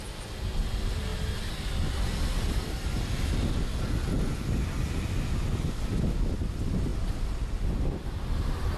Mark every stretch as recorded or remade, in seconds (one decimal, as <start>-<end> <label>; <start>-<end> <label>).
0.0-8.8 recorded